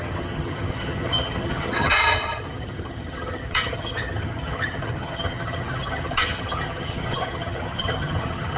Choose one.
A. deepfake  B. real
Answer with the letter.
A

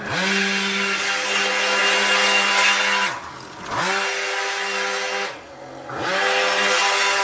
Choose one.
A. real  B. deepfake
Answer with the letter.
A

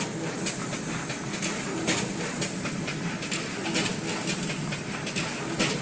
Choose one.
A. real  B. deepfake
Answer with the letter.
A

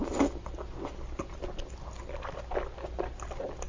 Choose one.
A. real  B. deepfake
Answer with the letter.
A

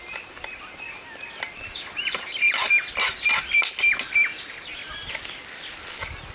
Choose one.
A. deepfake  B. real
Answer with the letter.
B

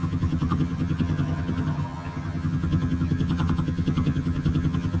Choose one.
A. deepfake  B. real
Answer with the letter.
A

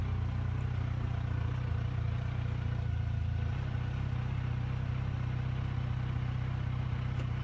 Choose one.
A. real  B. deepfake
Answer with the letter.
A